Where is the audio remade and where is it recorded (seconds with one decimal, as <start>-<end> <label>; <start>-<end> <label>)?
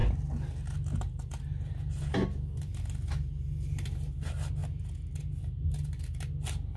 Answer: 0.0-6.8 recorded